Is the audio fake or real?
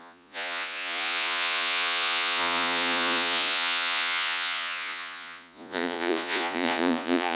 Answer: fake